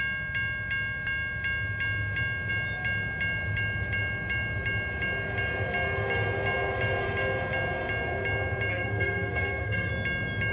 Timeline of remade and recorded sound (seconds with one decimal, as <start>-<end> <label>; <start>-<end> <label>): 0.0-8.7 recorded; 8.7-9.9 remade; 9.9-10.5 recorded